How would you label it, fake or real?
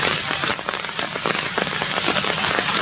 real